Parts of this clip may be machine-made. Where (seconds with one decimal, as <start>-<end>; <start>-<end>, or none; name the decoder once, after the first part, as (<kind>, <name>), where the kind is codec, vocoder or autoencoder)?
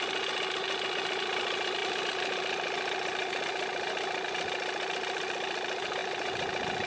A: 1.8-4.3 (vocoder, BigVGAN v2)